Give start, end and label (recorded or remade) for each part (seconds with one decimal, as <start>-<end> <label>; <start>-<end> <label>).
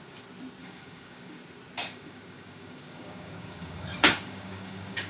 0.0-0.6 recorded; 0.6-1.4 remade; 1.4-1.8 recorded; 1.8-5.1 remade